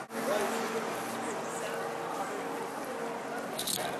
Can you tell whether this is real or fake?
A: real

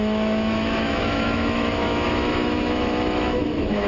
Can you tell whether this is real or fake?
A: fake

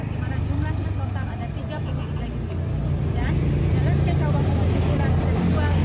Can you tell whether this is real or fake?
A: real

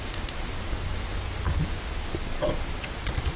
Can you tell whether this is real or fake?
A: real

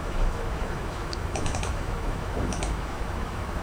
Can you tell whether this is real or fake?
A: fake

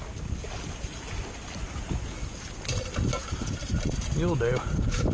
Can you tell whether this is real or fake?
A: real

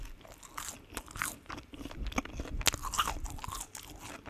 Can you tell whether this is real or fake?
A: real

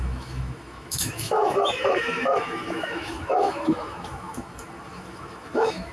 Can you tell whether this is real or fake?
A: fake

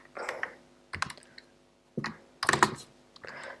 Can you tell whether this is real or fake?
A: real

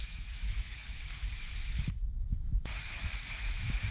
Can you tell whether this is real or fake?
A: fake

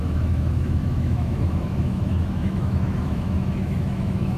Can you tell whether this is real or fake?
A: fake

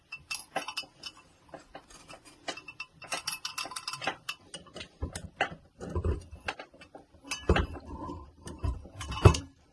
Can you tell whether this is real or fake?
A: real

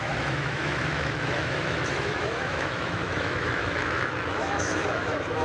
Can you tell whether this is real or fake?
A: fake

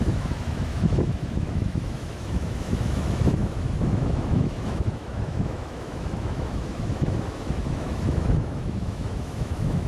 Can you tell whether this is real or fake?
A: fake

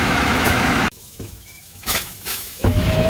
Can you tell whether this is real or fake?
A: fake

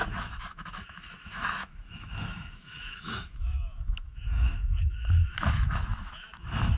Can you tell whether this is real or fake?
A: fake